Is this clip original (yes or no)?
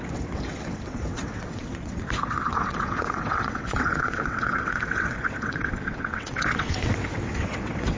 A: no